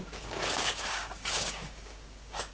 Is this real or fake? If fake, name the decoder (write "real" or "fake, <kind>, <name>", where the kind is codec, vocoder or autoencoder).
fake, codec, DAC